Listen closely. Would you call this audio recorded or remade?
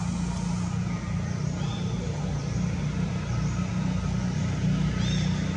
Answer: recorded